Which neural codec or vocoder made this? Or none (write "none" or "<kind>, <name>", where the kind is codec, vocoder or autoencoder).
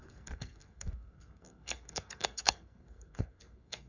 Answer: codec, SNAC